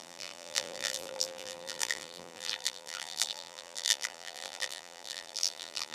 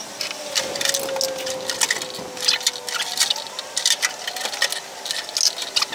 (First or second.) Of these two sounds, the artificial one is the first